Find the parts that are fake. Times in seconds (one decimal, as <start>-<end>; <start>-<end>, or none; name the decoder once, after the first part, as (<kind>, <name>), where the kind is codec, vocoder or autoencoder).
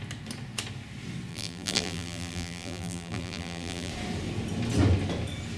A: 1.3-3.9 (vocoder, BigVGAN v2)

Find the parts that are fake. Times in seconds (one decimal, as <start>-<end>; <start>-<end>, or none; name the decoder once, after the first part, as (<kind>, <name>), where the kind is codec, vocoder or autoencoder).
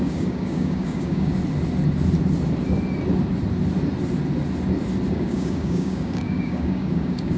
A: 0.0-1.4 (codec, DAC); 5.1-7.4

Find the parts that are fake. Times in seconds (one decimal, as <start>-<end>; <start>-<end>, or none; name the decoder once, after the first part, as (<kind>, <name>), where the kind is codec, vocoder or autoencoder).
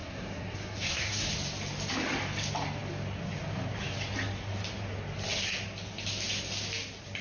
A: 0.0-1.3 (codec, SNAC)